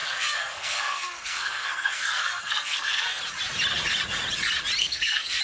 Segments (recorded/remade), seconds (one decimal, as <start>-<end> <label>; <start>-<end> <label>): 0.0-3.2 remade; 3.2-4.8 recorded; 4.8-5.4 remade